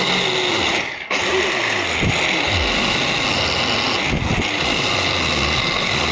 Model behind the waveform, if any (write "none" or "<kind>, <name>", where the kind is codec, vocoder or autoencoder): none